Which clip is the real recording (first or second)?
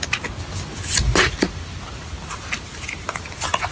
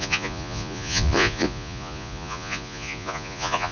first